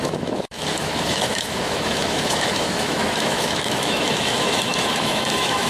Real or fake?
fake